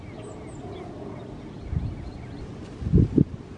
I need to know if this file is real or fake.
real